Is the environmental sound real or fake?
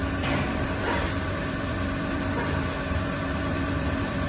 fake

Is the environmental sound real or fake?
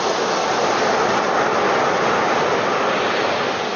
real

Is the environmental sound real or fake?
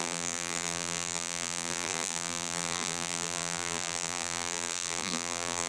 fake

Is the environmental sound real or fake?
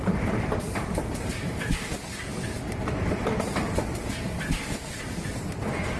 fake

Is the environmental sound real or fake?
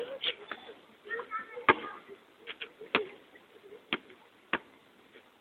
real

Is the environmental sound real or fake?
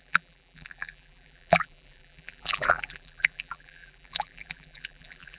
fake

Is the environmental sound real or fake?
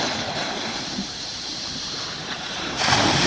fake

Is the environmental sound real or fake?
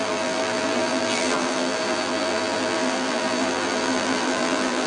fake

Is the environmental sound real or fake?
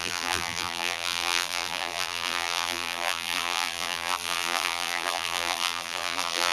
fake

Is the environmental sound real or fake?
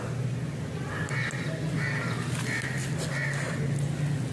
real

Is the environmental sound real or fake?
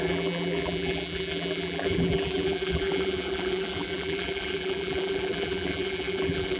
fake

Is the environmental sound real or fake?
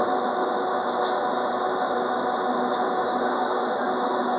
real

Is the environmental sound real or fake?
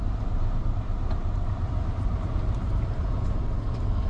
fake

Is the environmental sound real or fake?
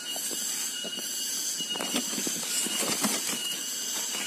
fake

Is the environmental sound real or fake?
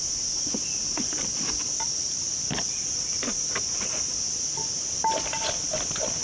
real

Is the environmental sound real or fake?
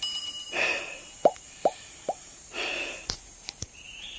fake